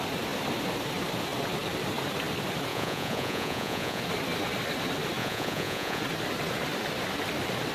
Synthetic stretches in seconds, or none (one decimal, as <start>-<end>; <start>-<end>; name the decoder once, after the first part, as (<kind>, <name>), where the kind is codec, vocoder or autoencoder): 2.7-4.0 (vocoder, Vocos); 5.2-6.0